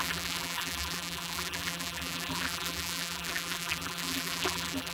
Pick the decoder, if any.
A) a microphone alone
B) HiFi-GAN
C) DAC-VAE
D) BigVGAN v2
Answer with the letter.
D